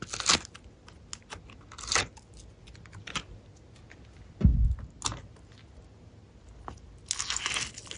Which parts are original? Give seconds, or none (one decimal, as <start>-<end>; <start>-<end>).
0.0-8.0